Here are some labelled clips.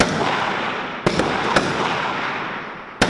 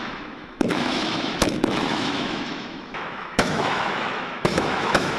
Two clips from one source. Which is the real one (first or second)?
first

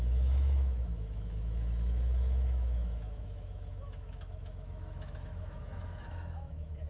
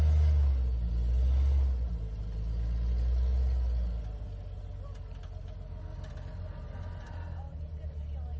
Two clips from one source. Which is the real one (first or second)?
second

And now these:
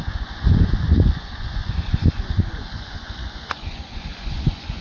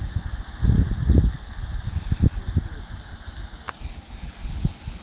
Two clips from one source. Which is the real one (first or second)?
second